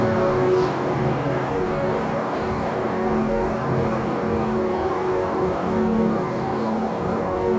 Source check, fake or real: fake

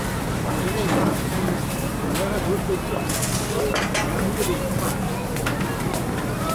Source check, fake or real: real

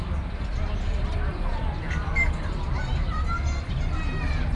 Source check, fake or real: real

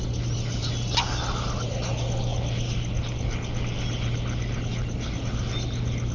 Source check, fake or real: real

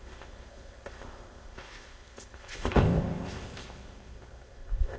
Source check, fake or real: fake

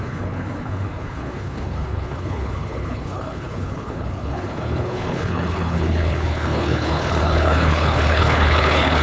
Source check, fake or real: fake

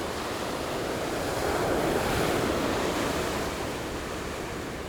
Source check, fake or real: fake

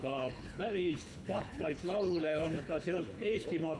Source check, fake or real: fake